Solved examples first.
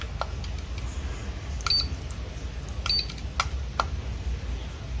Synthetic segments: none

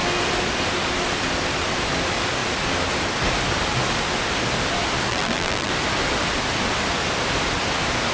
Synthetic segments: 5.1-5.7 (vocoder, BigVGAN v2)

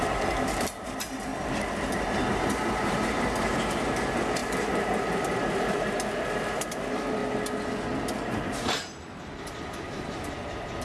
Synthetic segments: 0.0-1.3 (vocoder, BigVGAN v2); 2.3-7.2; 9.4-10.8

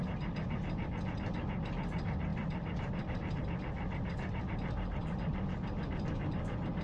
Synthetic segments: 2.3-3.4 (vocoder, BigVGAN v2)